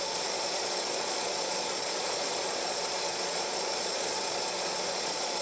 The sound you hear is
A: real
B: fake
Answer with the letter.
B